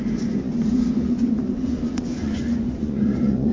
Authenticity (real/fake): fake